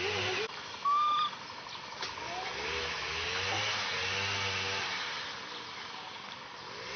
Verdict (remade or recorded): recorded